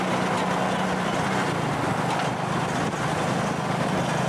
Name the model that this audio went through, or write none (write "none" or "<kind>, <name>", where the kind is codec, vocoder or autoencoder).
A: none